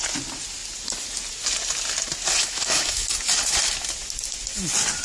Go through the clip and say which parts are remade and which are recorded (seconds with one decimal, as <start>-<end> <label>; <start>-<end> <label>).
0.0-2.4 recorded; 2.4-3.1 remade; 3.1-5.0 recorded